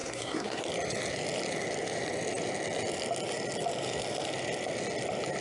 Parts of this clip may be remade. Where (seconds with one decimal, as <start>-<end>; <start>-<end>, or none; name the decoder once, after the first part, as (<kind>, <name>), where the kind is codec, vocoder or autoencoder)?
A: 0.0-0.6 (codec, SNAC)